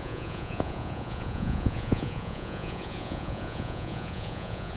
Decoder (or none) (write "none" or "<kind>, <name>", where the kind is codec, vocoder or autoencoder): vocoder, Vocos